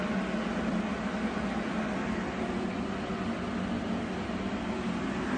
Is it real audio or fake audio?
real